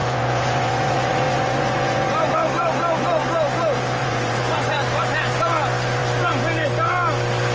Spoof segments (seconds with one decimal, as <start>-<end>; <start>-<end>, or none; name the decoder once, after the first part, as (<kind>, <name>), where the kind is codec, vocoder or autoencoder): 0.0-2.3 (vocoder, Vocos); 4.0-4.9

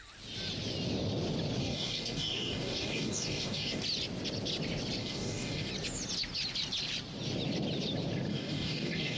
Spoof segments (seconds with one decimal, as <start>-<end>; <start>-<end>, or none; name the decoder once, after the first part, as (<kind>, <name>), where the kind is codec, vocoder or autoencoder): 1.6-3.8 (codec, DAC); 5.0-5.7; 8.3-9.2

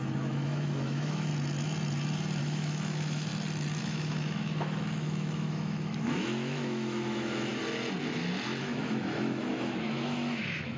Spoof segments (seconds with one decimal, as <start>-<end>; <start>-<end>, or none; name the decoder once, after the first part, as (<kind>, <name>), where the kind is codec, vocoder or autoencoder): 0.0-1.3 (autoencoder, DAC-VAE); 2.4-3.3; 3.8-7.5; 8.6-10.8

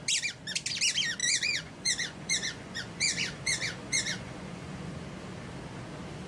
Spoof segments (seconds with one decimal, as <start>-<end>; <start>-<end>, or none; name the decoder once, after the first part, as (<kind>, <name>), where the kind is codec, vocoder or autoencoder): 1.2-5.0 (vocoder, Vocos)

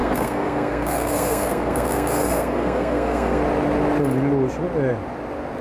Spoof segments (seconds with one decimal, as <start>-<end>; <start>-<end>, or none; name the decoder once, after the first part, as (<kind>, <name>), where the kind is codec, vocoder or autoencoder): 0.0-3.4 (codec, SNAC)